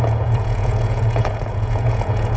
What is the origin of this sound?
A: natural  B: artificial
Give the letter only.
B